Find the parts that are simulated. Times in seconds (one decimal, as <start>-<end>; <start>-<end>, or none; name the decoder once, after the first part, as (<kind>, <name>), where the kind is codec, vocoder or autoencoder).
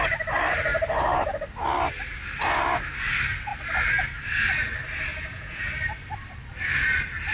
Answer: 5.1-5.7 (vocoder, Vocos)